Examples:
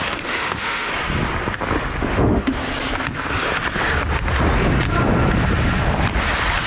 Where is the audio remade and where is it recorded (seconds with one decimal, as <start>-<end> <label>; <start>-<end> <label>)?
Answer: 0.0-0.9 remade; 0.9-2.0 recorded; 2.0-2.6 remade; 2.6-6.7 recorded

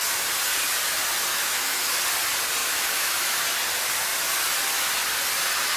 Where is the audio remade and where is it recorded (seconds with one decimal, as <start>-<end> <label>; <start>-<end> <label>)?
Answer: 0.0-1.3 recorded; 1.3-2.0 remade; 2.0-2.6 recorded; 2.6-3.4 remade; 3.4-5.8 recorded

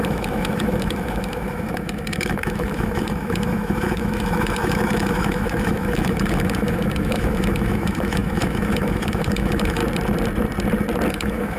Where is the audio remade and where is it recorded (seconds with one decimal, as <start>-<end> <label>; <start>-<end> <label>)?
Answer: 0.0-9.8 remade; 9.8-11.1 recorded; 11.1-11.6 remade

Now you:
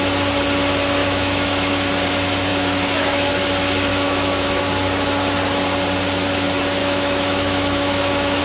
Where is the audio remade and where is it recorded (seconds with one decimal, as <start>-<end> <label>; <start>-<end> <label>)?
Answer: 0.0-1.0 recorded; 1.0-1.9 remade; 1.9-2.5 recorded; 2.5-3.3 remade; 3.3-3.9 recorded; 3.9-4.6 remade; 4.6-6.8 recorded; 6.8-8.4 remade